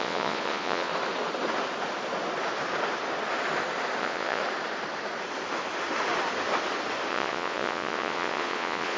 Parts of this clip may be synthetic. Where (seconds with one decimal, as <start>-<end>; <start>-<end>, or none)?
0.0-0.9; 4.0-4.4; 7.1-9.0